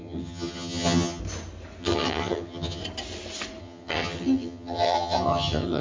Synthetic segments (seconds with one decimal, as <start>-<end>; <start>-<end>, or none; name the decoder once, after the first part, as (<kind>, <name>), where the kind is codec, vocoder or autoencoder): 0.0-1.2 (vocoder, HiFi-GAN); 1.8-2.8; 3.6-5.8